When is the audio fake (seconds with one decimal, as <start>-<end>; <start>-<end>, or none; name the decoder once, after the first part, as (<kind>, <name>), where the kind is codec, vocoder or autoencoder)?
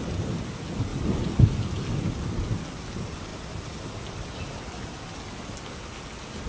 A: none